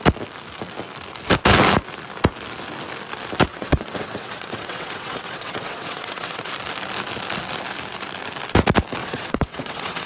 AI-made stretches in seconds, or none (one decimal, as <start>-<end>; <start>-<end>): 3.5-6.5; 9.0-10.1